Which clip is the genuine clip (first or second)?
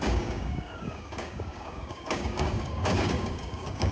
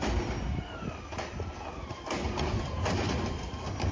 second